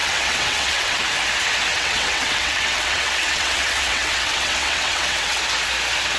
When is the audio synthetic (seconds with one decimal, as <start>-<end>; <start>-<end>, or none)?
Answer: 0.0-1.0; 1.7-5.4